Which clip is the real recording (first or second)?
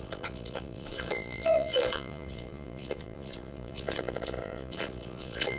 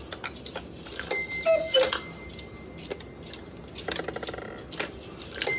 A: second